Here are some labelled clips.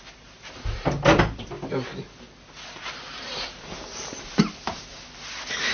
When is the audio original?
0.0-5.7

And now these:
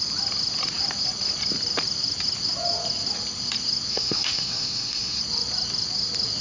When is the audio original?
0.0-3.9; 5.2-6.4

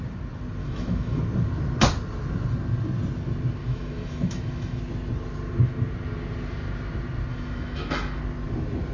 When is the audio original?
0.0-0.6; 1.2-3.6; 4.8-7.3; 8.2-8.9